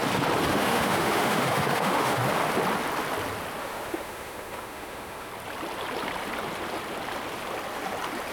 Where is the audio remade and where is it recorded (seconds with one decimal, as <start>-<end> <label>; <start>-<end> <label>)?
0.0-0.5 recorded; 0.5-2.2 remade; 2.2-3.6 recorded; 3.6-5.3 remade; 5.3-8.3 recorded

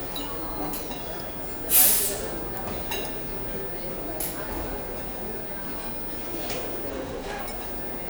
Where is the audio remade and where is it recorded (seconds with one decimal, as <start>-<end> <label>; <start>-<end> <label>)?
0.0-6.9 recorded; 6.9-7.4 remade; 7.4-8.1 recorded

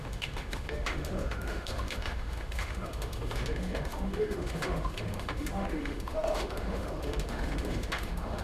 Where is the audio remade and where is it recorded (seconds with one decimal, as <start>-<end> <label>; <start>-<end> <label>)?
0.0-8.4 remade

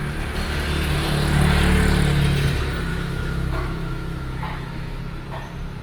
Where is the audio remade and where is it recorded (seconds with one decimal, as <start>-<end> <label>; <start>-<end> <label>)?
0.0-2.9 recorded; 2.9-5.0 remade; 5.0-5.8 recorded

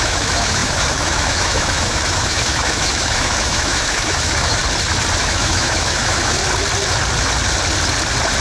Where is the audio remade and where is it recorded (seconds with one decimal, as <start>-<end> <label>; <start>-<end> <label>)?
0.0-4.6 remade; 4.6-5.2 recorded; 5.2-6.4 remade; 6.4-8.4 recorded

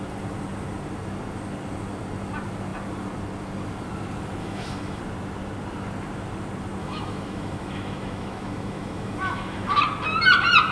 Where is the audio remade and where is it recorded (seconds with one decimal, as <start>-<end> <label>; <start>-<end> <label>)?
0.0-4.4 recorded; 4.4-5.0 remade; 5.0-6.8 recorded; 6.8-9.8 remade; 9.8-10.7 recorded

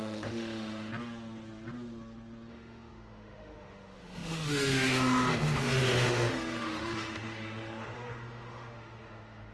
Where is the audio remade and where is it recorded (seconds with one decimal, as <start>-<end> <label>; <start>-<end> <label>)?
0.0-0.9 remade; 0.9-2.5 recorded; 2.5-9.5 remade

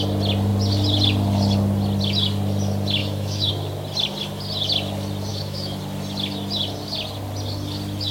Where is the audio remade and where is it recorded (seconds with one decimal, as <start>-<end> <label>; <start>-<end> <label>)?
0.0-3.0 recorded; 3.0-3.5 remade; 3.5-5.3 recorded; 5.3-5.8 remade; 5.8-8.1 recorded